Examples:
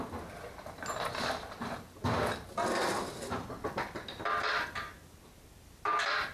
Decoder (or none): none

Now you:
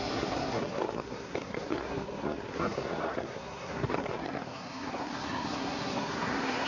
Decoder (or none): codec, SNAC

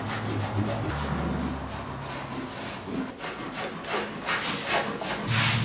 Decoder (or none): none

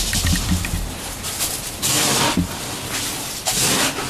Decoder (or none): none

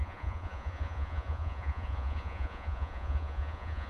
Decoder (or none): vocoder, Vocos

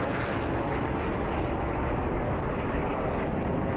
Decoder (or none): none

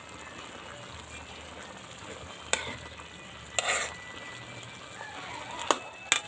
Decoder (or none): none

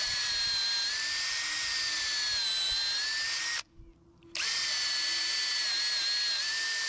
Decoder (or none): none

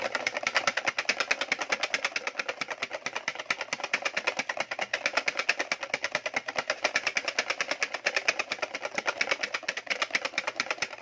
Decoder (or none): none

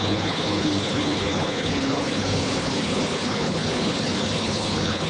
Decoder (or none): codec, HILCodec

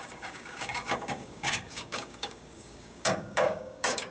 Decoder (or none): codec, DAC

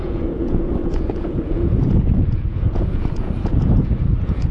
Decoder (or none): vocoder, Vocos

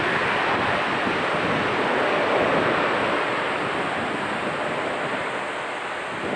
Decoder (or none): none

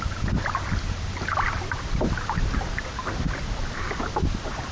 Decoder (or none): none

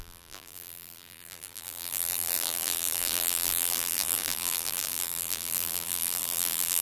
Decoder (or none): vocoder, BigVGAN v2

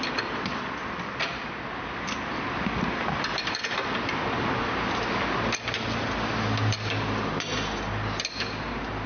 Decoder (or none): none